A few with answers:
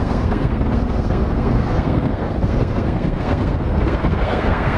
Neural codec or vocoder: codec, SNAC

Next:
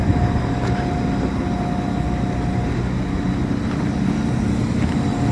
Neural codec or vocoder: none